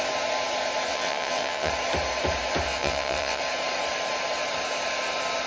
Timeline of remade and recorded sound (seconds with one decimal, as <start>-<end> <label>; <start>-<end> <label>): 0.0-0.9 recorded; 0.9-1.7 remade; 1.7-2.7 recorded; 2.7-3.4 remade; 3.4-5.5 recorded